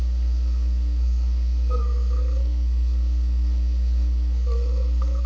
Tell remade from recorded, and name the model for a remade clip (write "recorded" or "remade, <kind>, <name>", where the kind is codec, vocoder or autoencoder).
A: remade, codec, SNAC